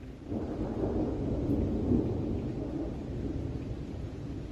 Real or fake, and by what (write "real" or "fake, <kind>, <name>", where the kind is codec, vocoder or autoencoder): real